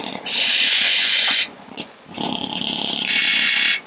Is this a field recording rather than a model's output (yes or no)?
no